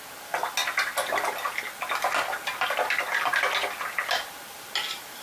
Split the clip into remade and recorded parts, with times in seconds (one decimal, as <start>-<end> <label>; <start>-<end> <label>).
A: 0.0-5.2 recorded